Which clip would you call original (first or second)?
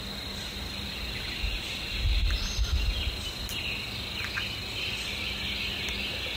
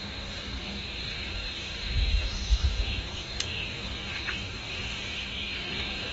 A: first